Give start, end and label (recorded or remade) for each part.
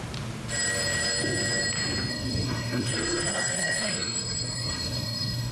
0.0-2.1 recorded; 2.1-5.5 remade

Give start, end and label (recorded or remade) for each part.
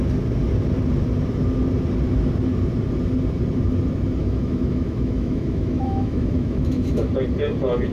0.0-4.2 recorded; 4.2-7.0 remade; 7.0-7.9 recorded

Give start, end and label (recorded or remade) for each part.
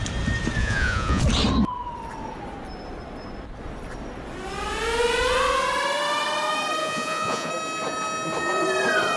0.0-0.6 recorded; 0.6-1.2 remade; 1.2-6.8 recorded; 6.8-7.5 remade; 7.5-9.2 recorded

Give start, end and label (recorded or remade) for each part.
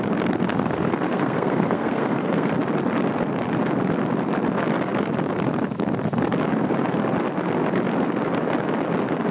0.0-0.5 recorded; 0.5-2.5 remade; 2.5-9.3 recorded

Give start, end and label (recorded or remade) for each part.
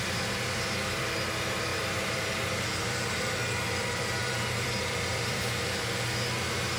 0.0-1.7 recorded; 1.7-5.6 remade; 5.6-6.8 recorded